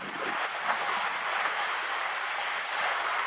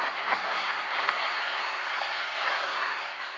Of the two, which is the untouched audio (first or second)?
first